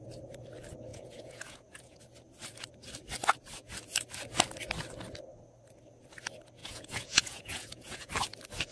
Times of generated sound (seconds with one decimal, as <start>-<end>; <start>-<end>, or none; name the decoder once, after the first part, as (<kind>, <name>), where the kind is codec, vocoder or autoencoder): 0.9-2.0 (vocoder, Vocos); 6.6-8.1